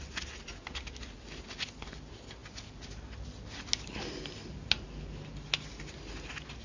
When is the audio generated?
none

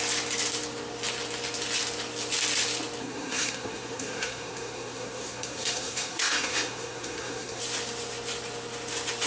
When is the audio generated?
3.0-7.6 (codec, SNAC)

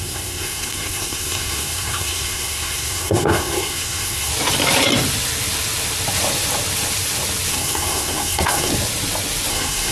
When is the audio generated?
0.0-4.3 (codec, SNAC); 7.5-8.7; 9.5-9.9

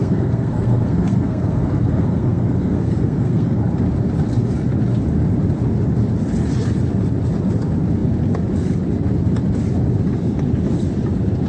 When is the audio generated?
0.0-3.6 (codec, SNAC)